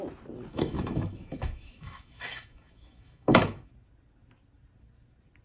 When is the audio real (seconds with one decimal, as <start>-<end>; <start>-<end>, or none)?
0.0-0.5; 3.7-5.4